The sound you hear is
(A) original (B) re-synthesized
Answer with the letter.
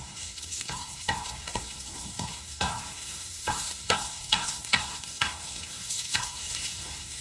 B